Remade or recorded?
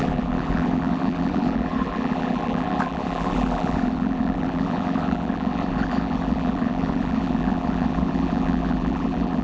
remade